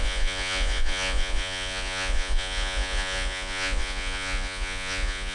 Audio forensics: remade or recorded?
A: remade